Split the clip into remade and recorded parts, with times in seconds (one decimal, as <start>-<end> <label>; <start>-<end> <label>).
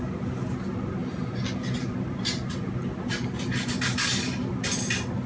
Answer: 0.0-5.3 recorded